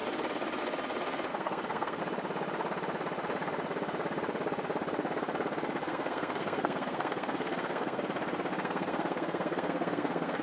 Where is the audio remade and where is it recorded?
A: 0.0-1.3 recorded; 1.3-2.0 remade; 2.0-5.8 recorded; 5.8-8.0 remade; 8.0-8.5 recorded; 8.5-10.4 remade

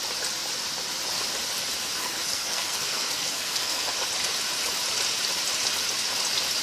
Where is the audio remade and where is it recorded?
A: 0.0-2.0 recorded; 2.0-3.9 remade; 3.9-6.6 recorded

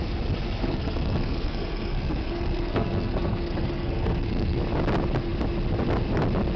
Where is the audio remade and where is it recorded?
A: 0.0-0.6 recorded; 0.6-4.6 remade; 4.6-6.6 recorded

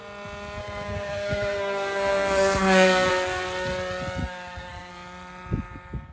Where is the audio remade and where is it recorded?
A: 0.0-0.6 recorded; 0.6-3.1 remade; 3.1-4.2 recorded; 4.2-4.9 remade; 4.9-6.1 recorded

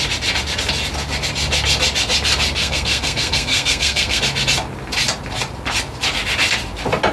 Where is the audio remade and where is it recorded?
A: 0.0-2.6 recorded; 2.6-4.2 remade; 4.2-7.1 recorded

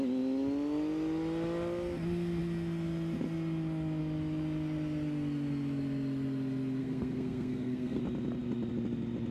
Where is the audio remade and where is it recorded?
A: 0.0-6.8 recorded; 6.8-8.0 remade; 8.0-9.3 recorded

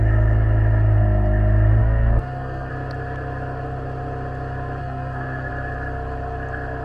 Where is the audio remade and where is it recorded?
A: 0.0-1.8 recorded; 1.8-2.7 remade; 2.7-4.8 recorded; 4.8-5.5 remade; 5.5-6.8 recorded